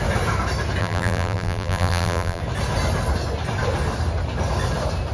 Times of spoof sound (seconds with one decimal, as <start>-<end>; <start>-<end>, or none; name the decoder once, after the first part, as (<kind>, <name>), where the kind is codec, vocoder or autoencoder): 0.8-2.4 (vocoder, BigVGAN v2)